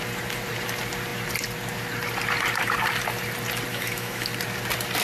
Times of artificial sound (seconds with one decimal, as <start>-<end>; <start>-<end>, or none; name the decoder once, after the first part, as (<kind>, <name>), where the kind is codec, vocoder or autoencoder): 3.7-4.3 (autoencoder, DAC-VAE)